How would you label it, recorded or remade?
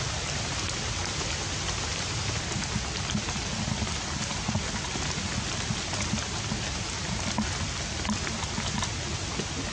recorded